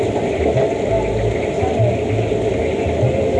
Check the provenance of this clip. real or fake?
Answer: real